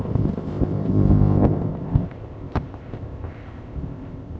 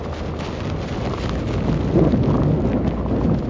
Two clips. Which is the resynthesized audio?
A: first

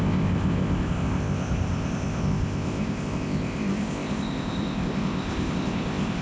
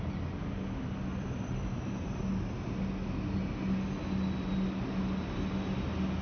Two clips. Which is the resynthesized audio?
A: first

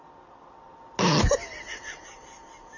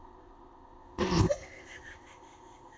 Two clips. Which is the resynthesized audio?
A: second